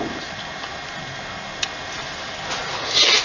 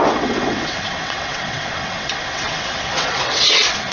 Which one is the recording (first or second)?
first